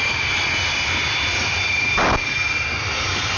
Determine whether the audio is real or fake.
real